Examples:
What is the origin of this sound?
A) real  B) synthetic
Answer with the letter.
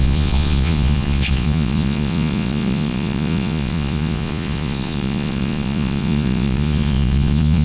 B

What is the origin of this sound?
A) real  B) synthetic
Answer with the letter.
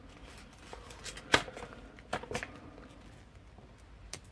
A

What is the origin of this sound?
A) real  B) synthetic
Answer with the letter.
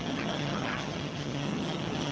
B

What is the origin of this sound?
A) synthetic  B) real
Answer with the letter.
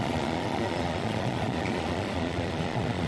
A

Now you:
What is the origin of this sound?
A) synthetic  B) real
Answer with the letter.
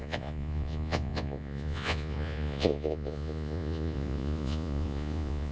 A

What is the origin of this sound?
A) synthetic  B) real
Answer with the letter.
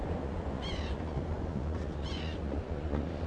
A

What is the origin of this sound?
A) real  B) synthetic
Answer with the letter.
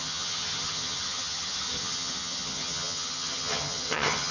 B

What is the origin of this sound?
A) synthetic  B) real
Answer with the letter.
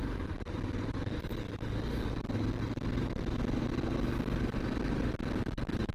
B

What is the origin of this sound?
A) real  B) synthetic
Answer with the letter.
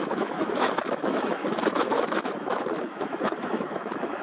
B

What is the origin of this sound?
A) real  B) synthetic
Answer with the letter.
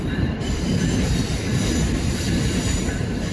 B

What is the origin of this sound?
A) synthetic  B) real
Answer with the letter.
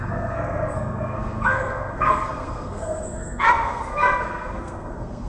A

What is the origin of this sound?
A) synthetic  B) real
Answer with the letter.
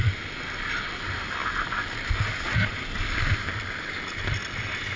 B